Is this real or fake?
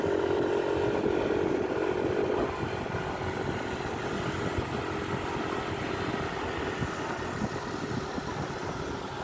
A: real